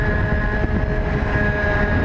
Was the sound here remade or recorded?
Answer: recorded